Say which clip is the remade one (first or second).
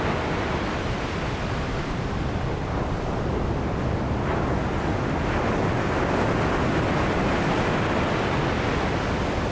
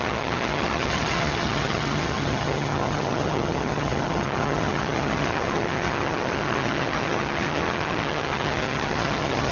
second